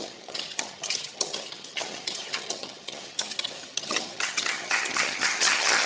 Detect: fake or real fake